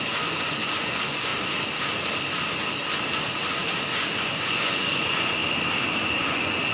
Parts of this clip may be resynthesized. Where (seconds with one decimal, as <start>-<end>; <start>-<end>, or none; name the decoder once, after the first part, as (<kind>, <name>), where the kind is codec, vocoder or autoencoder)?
0.0-1.3 (vocoder, Vocos); 3.9-5.4; 6.2-6.7